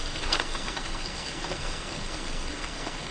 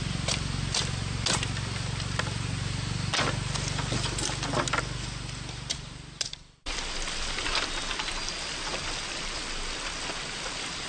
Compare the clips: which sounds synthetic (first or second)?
first